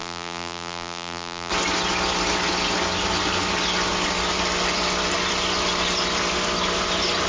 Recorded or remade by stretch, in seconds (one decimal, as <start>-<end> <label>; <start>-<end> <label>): 0.0-1.5 remade; 1.5-7.3 recorded